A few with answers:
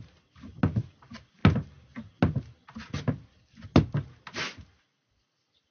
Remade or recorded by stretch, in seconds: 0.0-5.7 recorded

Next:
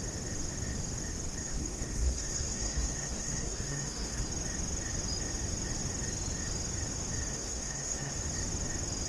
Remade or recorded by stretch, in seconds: 0.0-1.4 recorded; 1.4-4.3 remade; 4.3-7.3 recorded; 7.3-8.1 remade; 8.1-9.1 recorded

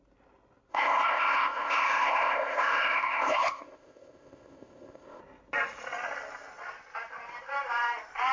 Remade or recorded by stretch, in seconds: 0.0-0.7 recorded; 0.7-5.2 remade; 5.2-8.3 recorded

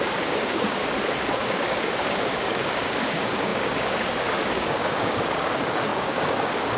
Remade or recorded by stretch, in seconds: 0.0-0.8 remade; 0.8-1.3 recorded; 1.3-6.8 remade

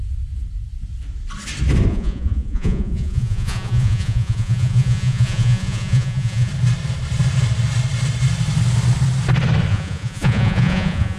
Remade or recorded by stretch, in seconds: 0.0-1.9 recorded; 1.9-6.5 remade; 6.5-9.7 recorded; 9.7-11.2 remade

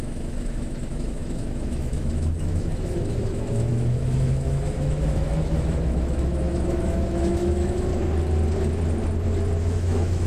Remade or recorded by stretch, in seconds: 0.0-7.9 remade; 7.9-9.6 recorded; 9.6-10.3 remade